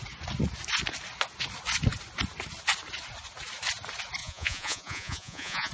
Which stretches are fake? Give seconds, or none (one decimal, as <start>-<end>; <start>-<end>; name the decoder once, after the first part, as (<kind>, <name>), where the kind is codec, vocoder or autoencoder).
4.2-5.7 (vocoder, Vocos)